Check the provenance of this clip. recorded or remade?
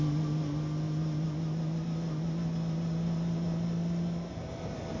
recorded